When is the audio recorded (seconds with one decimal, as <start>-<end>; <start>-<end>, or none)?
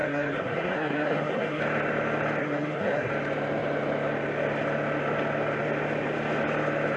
1.6-2.4; 3.1-7.0